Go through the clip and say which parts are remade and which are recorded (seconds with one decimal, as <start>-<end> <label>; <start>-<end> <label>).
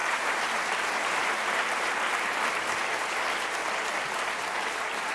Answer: 0.0-3.6 remade; 3.6-4.3 recorded; 4.3-5.1 remade